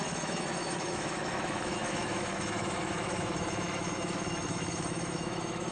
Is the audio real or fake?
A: fake